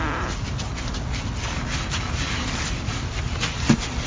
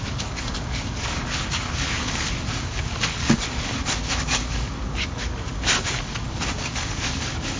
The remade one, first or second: second